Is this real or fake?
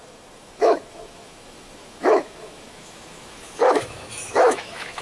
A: fake